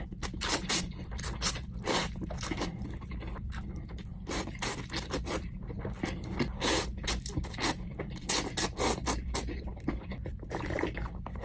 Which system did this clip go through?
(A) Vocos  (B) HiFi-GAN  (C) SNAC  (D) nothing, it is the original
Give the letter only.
D